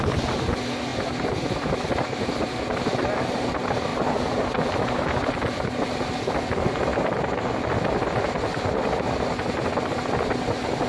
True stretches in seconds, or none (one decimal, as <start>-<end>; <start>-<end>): 0.0-10.9

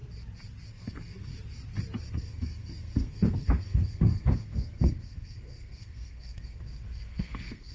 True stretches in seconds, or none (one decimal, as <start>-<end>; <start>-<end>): 0.0-0.7; 1.3-2.1

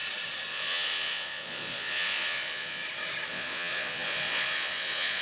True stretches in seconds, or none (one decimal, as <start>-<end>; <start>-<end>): 0.0-0.5; 2.8-3.3

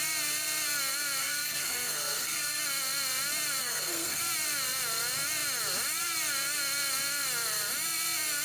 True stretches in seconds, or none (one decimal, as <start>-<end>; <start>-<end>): 0.0-1.2; 2.6-3.6; 4.2-8.4

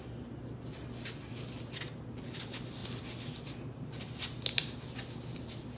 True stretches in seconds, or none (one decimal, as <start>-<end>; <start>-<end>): 0.0-5.8

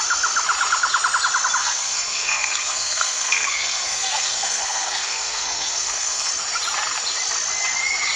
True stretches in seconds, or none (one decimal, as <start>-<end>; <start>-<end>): 0.0-1.6; 6.3-8.2

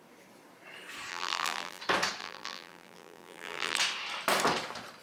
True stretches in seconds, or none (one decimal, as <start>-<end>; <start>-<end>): 0.0-1.1; 1.8-2.2; 3.8-5.0

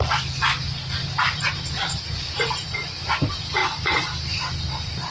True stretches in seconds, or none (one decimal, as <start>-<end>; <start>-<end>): 0.0-1.0; 3.0-3.6; 4.6-5.1